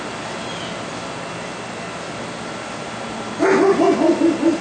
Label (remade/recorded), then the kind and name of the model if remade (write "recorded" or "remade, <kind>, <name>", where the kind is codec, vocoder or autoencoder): recorded